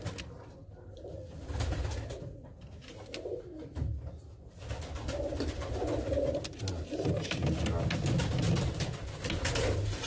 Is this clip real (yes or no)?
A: yes